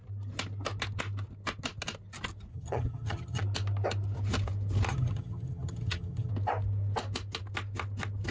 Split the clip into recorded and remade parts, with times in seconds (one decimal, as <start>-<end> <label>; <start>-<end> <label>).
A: 0.0-2.5 recorded; 2.5-3.4 remade; 3.4-4.9 recorded; 4.9-6.3 remade; 6.3-8.3 recorded